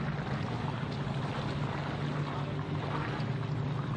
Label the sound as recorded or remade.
recorded